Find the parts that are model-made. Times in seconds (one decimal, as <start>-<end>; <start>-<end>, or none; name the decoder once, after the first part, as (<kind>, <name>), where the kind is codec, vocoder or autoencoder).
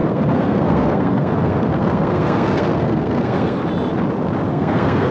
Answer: 0.0-3.6 (codec, SNAC); 4.5-5.1